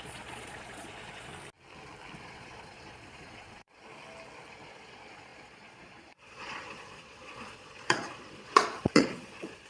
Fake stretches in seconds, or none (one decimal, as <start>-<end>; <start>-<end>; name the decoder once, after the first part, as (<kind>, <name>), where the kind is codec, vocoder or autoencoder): 0.0-1.3 (vocoder, Vocos); 2.2-3.9; 4.5-9.7